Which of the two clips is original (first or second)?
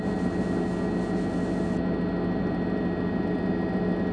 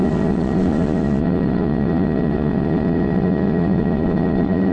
first